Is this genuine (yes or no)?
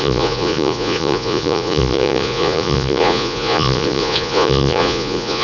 no